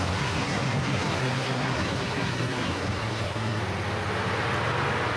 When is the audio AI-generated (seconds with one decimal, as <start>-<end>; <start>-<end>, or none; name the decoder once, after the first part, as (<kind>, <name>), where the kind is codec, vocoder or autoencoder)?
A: 0.0-3.6 (codec, SNAC)